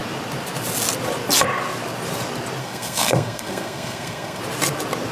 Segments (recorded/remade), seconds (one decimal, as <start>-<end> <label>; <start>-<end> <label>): 0.0-2.6 recorded; 2.6-4.4 remade; 4.4-5.1 recorded